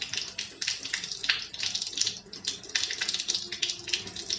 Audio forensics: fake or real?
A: real